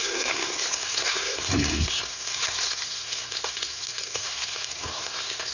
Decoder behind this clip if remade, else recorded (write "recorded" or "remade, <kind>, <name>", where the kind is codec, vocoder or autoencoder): remade, codec, SNAC